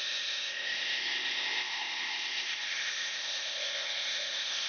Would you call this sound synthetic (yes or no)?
yes